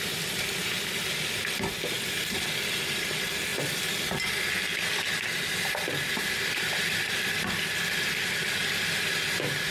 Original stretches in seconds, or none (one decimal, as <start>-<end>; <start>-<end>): 0.0-9.7